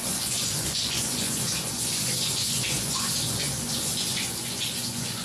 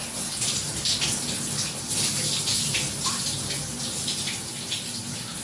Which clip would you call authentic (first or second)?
second